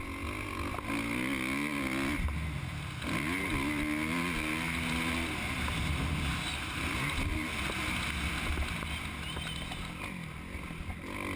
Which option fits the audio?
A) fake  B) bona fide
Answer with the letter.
B